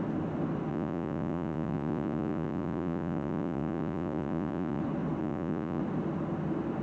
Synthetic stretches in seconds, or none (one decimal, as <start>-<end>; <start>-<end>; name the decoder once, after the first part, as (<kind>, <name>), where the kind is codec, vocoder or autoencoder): 0.7-4.8 (vocoder, Vocos); 5.2-5.8